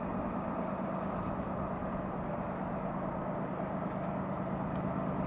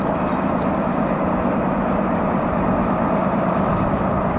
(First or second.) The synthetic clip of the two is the second